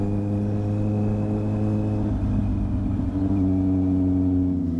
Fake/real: real